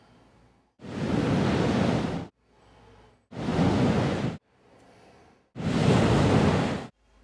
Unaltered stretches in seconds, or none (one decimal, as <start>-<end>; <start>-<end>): 0.0-3.5; 4.2-7.2